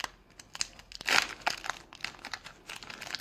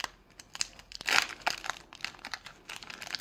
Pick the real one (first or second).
first